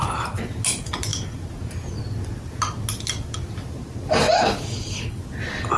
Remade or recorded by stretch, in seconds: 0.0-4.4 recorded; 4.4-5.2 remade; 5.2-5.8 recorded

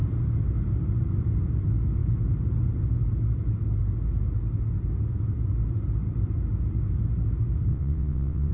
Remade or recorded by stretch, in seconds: 0.0-7.7 recorded; 7.7-8.5 remade

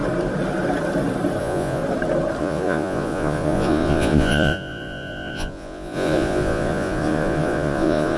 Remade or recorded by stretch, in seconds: 0.0-1.4 recorded; 1.4-1.8 remade; 1.8-2.4 recorded; 2.4-8.2 remade

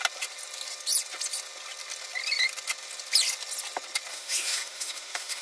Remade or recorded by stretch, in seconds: 0.0-4.1 recorded; 4.1-5.4 remade

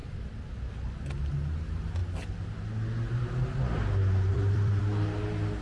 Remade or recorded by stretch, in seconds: 0.0-0.5 remade; 0.5-4.3 recorded; 4.3-4.8 remade; 4.8-5.6 recorded

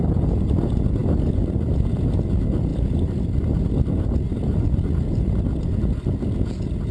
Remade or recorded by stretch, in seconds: 0.0-1.0 recorded; 1.0-2.1 remade; 2.1-2.7 recorded; 2.7-3.7 remade; 3.7-6.9 recorded

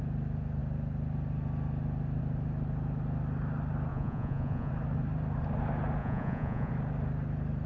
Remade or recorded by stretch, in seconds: 0.0-3.9 recorded; 3.9-4.7 remade; 4.7-6.0 recorded; 6.0-6.7 remade; 6.7-7.7 recorded